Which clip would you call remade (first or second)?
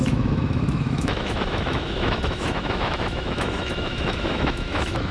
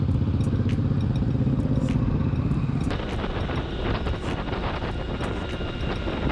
first